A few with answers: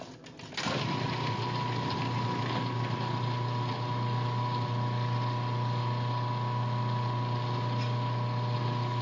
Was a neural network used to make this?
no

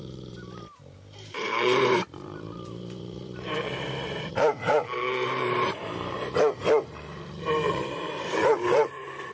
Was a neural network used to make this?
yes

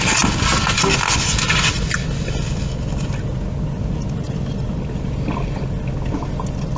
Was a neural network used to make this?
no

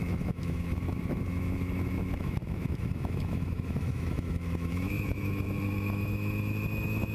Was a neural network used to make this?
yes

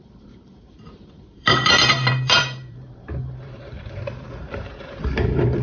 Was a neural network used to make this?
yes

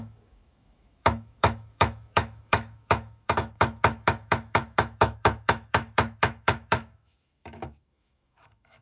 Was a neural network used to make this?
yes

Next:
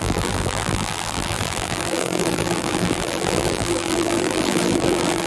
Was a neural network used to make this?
yes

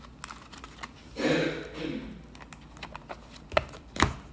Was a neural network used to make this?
no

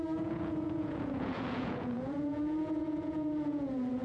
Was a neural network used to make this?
yes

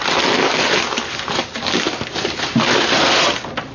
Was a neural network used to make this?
no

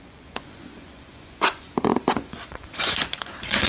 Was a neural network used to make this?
yes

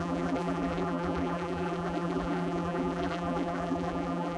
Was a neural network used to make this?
yes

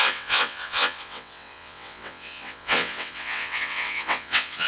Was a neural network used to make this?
yes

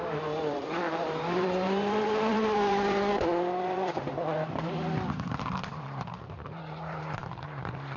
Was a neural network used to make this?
yes